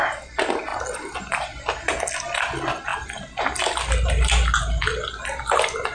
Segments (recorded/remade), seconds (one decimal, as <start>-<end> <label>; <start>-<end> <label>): 0.0-5.9 recorded

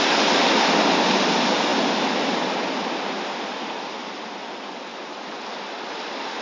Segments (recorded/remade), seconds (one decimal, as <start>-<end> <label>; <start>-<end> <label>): 0.0-6.4 recorded

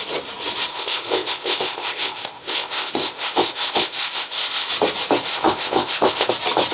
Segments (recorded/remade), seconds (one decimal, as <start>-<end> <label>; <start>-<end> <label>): 0.0-0.7 recorded; 0.7-4.7 remade; 4.7-5.3 recorded; 5.3-6.3 remade; 6.3-6.7 recorded

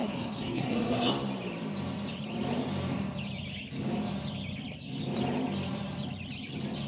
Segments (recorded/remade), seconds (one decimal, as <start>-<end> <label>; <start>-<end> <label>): 0.0-1.1 remade; 1.1-6.9 recorded

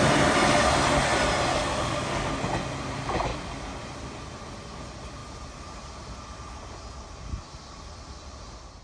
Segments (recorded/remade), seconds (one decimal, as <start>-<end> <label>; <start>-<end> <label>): 0.0-1.5 recorded; 1.5-2.3 remade; 2.3-8.8 recorded

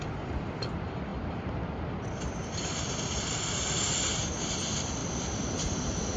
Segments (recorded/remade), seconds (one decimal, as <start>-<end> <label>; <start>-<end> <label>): 0.0-5.0 remade; 5.0-6.2 recorded

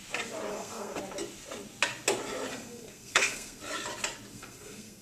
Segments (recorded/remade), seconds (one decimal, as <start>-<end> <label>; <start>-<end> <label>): 0.0-0.5 recorded; 0.5-1.0 remade; 1.0-2.5 recorded; 2.5-3.6 remade; 3.6-4.3 recorded; 4.3-5.0 remade

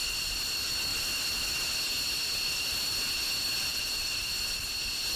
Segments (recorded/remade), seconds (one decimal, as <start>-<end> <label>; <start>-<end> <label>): 0.0-3.7 recorded; 3.7-4.3 remade; 4.3-5.2 recorded